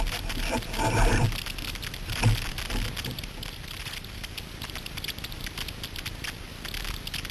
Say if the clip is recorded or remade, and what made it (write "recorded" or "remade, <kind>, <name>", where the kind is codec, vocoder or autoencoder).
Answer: recorded